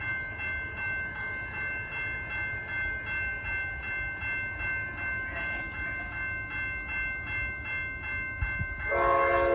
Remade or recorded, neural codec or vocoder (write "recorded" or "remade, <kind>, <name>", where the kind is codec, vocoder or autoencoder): recorded